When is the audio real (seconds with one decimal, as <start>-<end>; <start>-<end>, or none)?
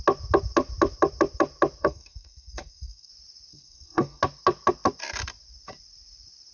0.0-1.8; 3.1-3.5; 4.2-6.5